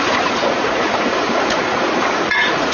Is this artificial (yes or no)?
yes